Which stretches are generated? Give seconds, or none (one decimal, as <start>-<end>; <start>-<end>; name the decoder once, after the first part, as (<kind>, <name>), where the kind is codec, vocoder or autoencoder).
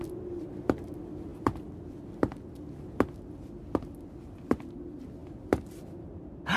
none